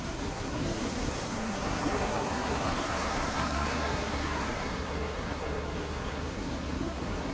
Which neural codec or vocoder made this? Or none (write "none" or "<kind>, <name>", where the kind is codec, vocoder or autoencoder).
codec, SNAC